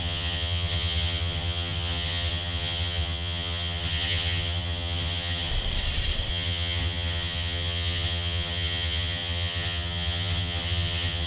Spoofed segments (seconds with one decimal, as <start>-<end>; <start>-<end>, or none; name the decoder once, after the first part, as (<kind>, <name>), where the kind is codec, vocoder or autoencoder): 0.0-5.5 (vocoder, HiFi-GAN); 6.3-11.3